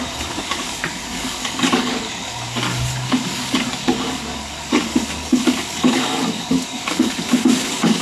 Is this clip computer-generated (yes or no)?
yes